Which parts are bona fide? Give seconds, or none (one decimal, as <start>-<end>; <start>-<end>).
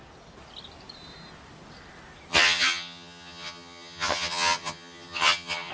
0.0-2.3